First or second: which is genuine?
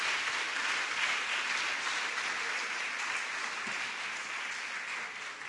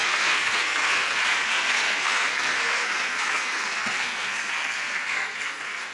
first